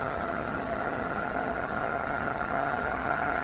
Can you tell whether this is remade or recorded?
remade